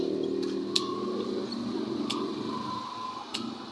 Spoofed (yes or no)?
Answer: no